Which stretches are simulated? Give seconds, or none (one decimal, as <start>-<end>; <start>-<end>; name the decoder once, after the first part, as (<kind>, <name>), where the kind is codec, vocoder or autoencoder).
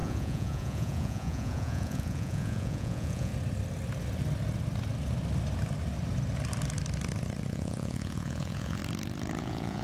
0.0-3.3 (vocoder, Vocos); 7.5-8.8; 9.4-9.8